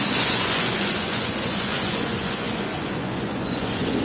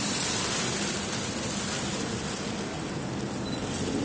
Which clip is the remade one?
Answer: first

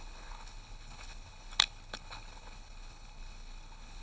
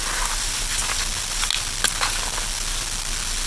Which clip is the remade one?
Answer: first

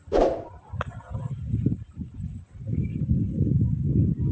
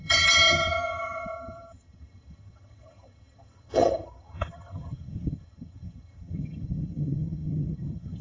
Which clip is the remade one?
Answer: second